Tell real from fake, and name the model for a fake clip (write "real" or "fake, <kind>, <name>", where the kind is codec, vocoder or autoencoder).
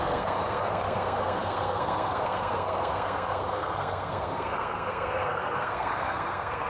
fake, codec, SNAC